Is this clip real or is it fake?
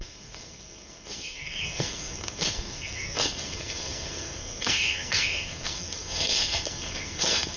fake